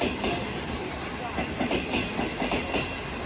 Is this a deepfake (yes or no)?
no